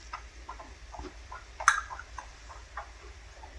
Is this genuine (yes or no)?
yes